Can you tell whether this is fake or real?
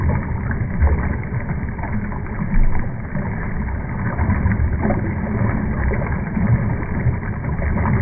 real